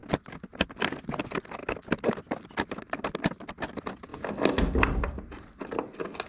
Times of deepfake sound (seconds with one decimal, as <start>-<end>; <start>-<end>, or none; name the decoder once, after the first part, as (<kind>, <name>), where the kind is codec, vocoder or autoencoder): none